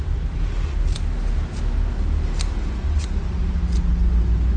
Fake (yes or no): no